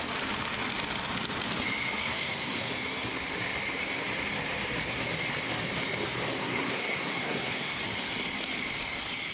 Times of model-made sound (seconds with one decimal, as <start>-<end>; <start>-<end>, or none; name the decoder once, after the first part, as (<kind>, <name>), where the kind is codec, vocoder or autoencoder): 2.0-2.7 (codec, SNAC); 6.4-7.8